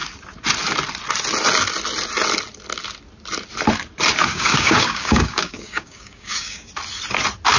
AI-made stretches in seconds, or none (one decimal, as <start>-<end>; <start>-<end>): 4.3-6.7